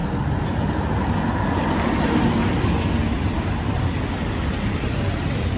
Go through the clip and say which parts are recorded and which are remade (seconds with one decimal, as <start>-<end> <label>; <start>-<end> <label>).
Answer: 0.0-5.6 recorded